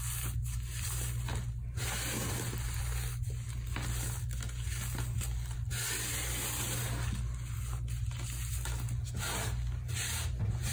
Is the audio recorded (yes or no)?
yes